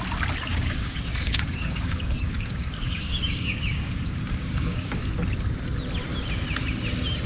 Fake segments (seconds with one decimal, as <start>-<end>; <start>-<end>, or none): 0.5-4.9

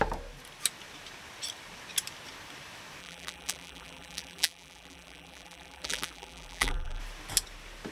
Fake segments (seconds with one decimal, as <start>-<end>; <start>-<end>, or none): 3.0-7.0

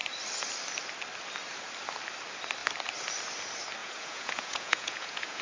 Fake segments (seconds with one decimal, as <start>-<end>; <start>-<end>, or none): 3.8-5.4

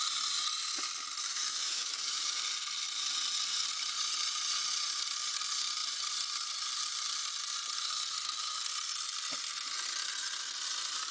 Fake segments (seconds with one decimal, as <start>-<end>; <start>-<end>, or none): 1.2-2.4

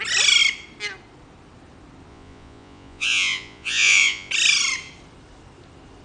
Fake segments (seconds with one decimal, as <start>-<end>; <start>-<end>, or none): 2.1-4.3

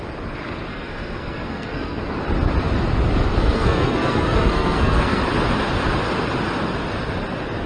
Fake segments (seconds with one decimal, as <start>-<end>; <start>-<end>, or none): 0.7-2.0; 3.4-5.2